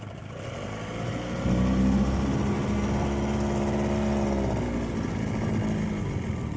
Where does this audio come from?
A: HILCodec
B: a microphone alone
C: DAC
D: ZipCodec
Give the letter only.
B